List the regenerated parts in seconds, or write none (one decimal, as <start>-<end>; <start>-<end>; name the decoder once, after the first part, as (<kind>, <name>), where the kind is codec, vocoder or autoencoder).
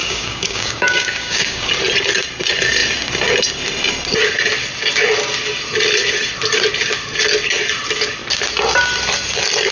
0.0-1.7 (codec, DAC)